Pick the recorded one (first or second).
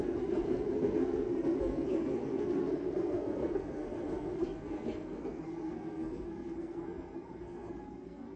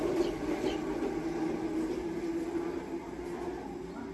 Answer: second